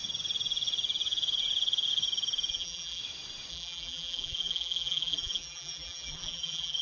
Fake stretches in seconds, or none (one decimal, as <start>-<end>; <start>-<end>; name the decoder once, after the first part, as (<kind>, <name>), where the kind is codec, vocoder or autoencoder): 2.5-3.0 (vocoder, BigVGAN v2); 3.5-6.8